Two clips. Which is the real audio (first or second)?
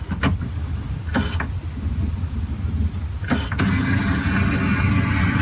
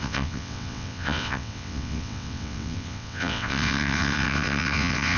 first